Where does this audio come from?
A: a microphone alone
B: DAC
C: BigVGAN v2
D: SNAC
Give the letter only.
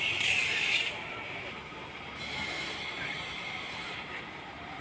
C